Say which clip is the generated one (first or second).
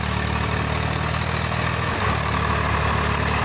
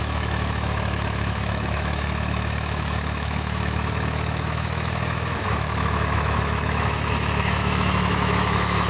second